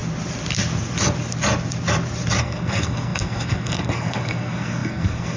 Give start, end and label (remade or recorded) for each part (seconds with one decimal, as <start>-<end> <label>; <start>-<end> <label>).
0.0-2.4 recorded; 2.4-5.4 remade